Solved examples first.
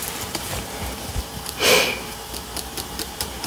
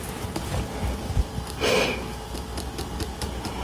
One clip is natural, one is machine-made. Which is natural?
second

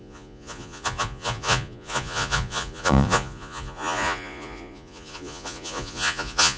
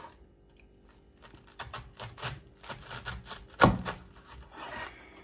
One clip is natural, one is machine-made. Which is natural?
second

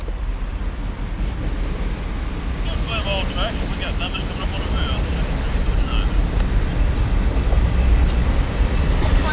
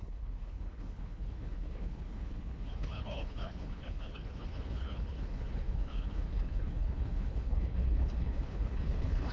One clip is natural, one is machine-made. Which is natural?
first